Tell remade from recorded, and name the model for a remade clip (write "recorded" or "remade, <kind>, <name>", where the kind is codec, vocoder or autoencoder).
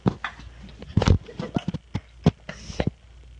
recorded